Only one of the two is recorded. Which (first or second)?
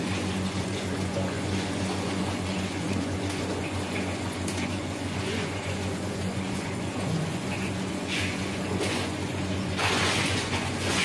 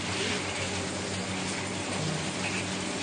second